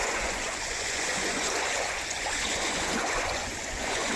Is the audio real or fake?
fake